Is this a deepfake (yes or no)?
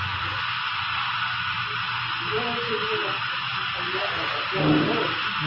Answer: no